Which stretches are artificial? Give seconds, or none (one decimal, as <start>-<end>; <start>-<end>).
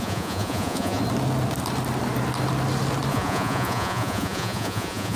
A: 0.0-1.0; 3.1-5.2